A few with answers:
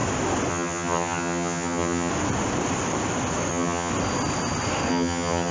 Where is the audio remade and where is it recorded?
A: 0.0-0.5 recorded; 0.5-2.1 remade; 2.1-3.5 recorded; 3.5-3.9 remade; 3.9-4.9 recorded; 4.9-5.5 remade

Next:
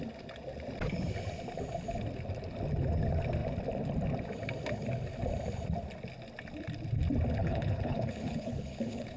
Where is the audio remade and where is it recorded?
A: 0.0-7.4 recorded; 7.4-9.2 remade